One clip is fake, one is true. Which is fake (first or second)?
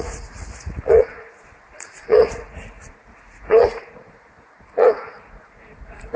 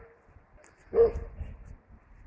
first